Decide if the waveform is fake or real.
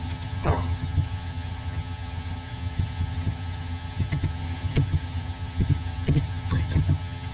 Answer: fake